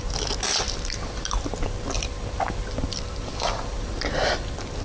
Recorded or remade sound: recorded